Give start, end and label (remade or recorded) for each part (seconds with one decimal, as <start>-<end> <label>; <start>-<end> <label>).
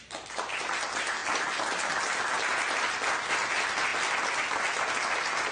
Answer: 0.0-5.5 recorded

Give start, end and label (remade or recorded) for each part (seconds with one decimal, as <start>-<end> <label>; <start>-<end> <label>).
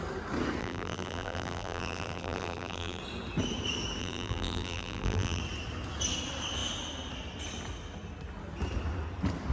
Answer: 0.0-0.6 recorded; 0.6-3.0 remade; 3.0-4.0 recorded; 4.0-5.4 remade; 5.4-9.5 recorded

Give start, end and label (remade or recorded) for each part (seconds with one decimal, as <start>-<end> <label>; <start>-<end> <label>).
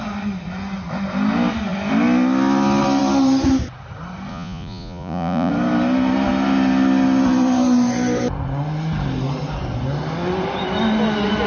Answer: 0.0-4.3 recorded; 4.3-5.5 remade; 5.5-11.5 recorded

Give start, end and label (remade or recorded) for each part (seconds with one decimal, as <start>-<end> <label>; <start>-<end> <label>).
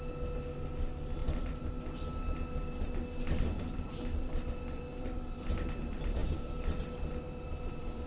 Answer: 0.0-1.2 recorded; 1.2-1.8 remade; 1.8-3.3 recorded; 3.3-5.4 remade; 5.4-6.2 recorded; 6.2-8.1 remade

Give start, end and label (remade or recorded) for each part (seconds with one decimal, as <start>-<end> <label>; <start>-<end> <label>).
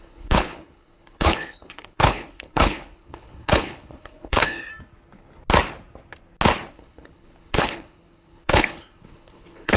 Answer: 0.0-4.7 remade; 4.7-6.7 recorded; 6.7-9.8 remade